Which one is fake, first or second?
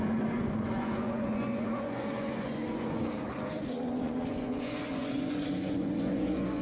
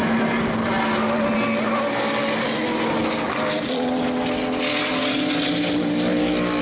first